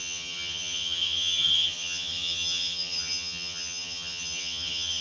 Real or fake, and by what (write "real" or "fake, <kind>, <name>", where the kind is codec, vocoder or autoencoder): fake, vocoder, HiFi-GAN